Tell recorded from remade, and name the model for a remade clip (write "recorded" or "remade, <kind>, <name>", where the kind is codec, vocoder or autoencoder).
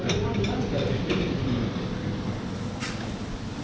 recorded